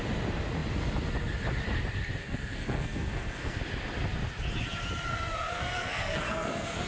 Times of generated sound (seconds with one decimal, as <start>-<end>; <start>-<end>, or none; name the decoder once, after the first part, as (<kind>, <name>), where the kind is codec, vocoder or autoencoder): 2.2-3.6 (codec, SNAC); 5.1-6.9